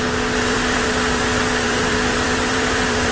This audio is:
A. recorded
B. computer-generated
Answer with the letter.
B